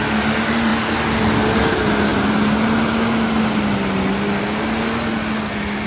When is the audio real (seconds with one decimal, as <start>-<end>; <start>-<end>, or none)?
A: 0.0-5.9